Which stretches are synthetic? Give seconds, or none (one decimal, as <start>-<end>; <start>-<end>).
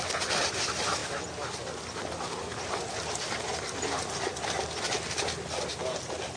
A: none